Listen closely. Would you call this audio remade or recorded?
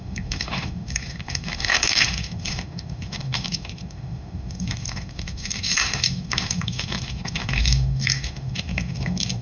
remade